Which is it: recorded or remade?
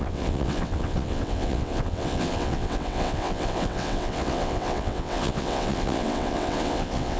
remade